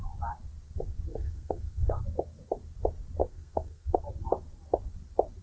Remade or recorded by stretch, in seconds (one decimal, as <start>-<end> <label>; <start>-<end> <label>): 0.0-1.1 recorded; 1.1-2.0 remade; 2.0-3.2 recorded; 3.2-4.1 remade; 4.1-5.4 recorded